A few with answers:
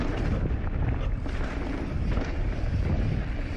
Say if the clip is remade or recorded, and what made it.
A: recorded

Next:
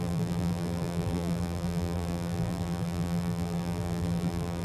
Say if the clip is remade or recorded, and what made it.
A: remade, vocoder, BigVGAN v2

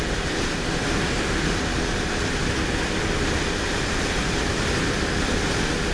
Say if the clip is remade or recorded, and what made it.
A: remade, vocoder, BigVGAN v2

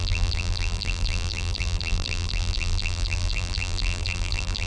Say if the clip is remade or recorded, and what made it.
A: remade, vocoder, BigVGAN v2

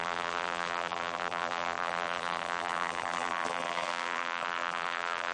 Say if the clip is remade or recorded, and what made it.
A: remade, vocoder, BigVGAN v2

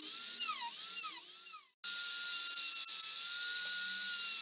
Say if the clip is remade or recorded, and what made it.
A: recorded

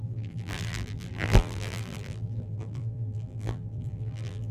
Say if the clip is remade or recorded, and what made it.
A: remade, vocoder, BigVGAN v2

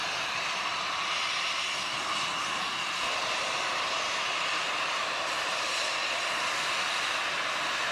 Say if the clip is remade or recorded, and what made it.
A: remade, vocoder, BigVGAN v2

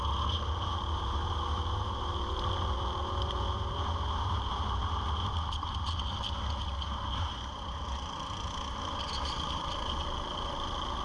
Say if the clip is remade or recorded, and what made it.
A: recorded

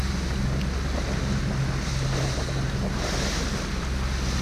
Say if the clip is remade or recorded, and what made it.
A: recorded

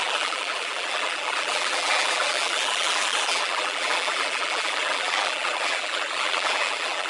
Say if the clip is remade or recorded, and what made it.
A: remade, vocoder, BigVGAN v2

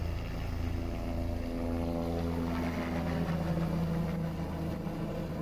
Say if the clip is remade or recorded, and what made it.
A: recorded